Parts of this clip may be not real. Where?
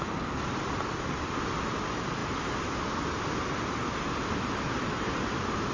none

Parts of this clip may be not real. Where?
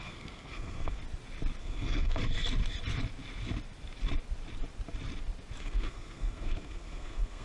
0.0-1.0 (codec, SNAC); 1.6-2.2; 5.6-7.4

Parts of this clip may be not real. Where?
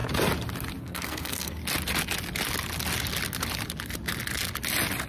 0.8-1.6 (codec, SNAC)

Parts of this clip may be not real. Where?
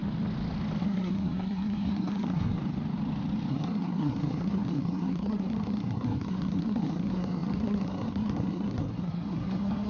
0.8-2.6 (codec, SNAC); 3.5-9.9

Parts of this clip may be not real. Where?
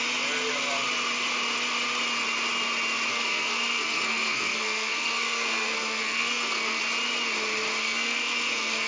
3.1-6.8 (codec, SNAC); 7.8-8.9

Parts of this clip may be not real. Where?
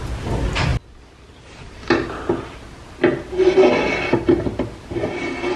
none